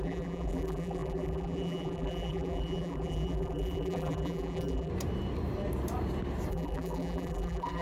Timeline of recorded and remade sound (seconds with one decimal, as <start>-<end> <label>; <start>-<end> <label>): 0.0-4.9 remade; 4.9-6.5 recorded; 6.5-7.8 remade

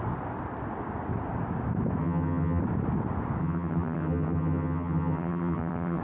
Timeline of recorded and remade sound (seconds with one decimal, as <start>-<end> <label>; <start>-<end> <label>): 0.0-2.0 recorded; 2.0-2.6 remade; 2.6-3.4 recorded; 3.4-6.0 remade